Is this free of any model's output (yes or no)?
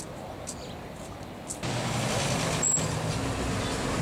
yes